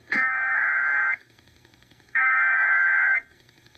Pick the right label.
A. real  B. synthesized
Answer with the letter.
B